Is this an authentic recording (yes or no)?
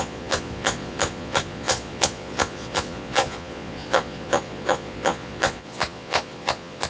no